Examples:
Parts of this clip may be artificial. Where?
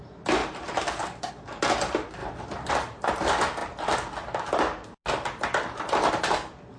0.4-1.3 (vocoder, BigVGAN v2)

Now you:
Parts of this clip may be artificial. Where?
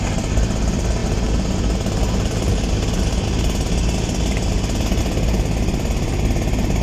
none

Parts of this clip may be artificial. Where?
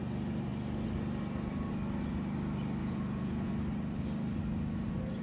2.8-3.5 (vocoder, Vocos)